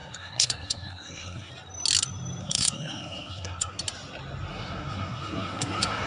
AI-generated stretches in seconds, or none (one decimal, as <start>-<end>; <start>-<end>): 0.0-1.5; 2.4-3.8; 4.5-6.1